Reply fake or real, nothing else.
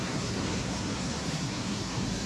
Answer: fake